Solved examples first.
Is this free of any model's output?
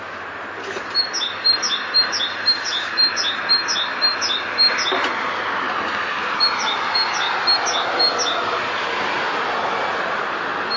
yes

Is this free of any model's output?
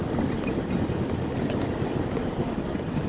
yes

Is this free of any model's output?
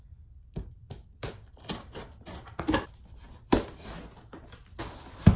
yes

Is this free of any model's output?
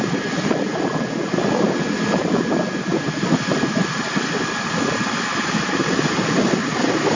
yes